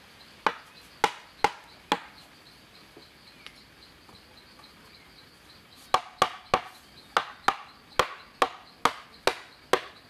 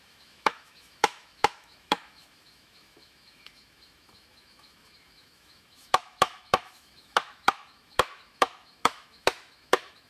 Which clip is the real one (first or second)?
first